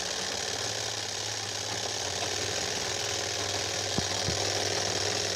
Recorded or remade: recorded